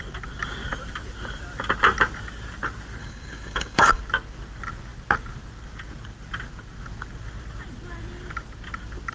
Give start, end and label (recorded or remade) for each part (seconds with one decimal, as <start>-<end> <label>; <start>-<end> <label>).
0.0-3.0 recorded; 3.0-4.0 remade; 4.0-9.1 recorded